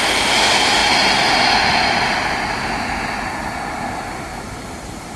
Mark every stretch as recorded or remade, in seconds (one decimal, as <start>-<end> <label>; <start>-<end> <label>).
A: 0.0-5.2 recorded